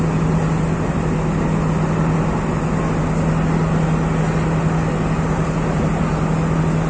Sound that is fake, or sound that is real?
real